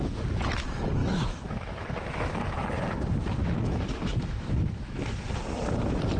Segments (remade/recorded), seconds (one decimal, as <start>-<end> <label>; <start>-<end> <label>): 0.0-1.0 recorded; 1.0-2.4 remade; 2.4-3.4 recorded; 3.4-5.2 remade; 5.2-6.2 recorded